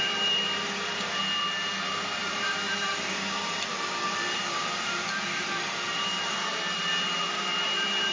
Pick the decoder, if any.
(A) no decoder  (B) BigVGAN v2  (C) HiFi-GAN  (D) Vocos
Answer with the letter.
B